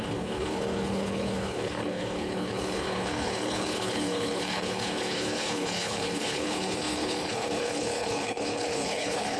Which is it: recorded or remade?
remade